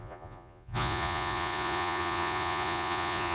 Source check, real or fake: fake